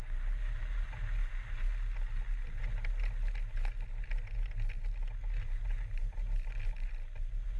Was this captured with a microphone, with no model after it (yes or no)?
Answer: yes